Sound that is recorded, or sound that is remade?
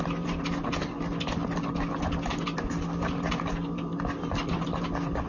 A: recorded